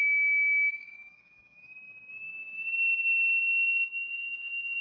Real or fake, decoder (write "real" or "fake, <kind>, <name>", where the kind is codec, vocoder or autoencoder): fake, codec, DAC